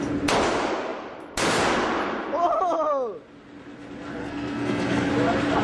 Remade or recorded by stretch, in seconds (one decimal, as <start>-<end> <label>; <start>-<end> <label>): 0.0-4.2 recorded; 4.2-5.1 remade; 5.1-5.6 recorded